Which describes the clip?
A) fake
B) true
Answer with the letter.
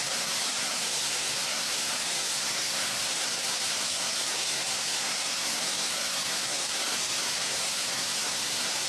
A